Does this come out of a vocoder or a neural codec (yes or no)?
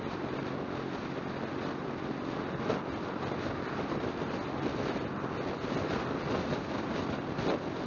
no